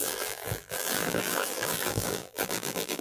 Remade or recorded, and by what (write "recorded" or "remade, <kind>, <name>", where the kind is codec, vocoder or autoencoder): remade, vocoder, BigVGAN v2